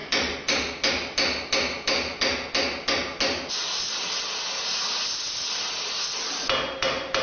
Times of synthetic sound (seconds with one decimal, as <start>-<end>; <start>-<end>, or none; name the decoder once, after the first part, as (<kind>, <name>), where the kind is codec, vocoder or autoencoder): none